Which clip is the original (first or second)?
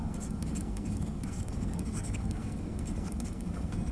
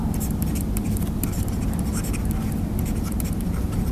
second